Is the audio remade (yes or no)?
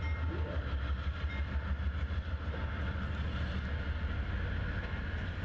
no